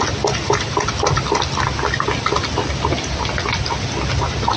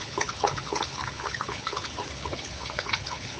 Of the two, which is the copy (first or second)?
second